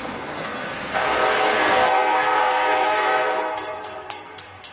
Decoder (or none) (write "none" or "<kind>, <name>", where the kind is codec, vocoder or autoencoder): codec, SNAC